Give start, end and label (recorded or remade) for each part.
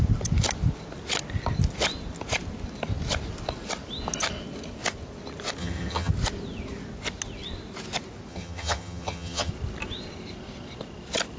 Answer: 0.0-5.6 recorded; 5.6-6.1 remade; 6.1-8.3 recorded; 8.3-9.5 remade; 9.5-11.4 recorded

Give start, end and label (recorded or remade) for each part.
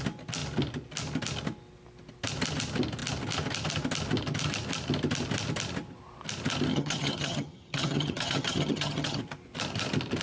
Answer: 0.0-6.7 recorded; 6.7-9.2 remade; 9.2-10.2 recorded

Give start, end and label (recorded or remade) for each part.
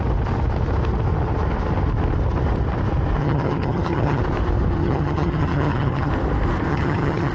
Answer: 0.0-3.2 recorded; 3.2-4.2 remade; 4.2-4.8 recorded; 4.8-6.1 remade; 6.1-6.7 recorded; 6.7-7.3 remade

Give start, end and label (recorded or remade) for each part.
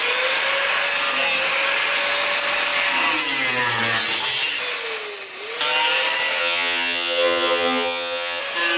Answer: 0.0-6.4 recorded; 6.4-8.4 remade; 8.4-8.8 recorded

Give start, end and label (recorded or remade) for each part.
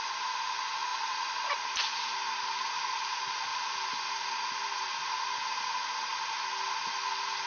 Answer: 0.0-7.5 recorded